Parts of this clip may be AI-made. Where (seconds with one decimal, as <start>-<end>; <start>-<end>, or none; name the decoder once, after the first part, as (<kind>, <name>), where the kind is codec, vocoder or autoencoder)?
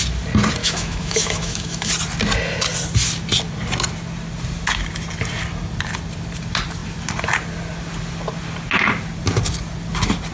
0.6-1.9 (autoencoder, DAC-VAE)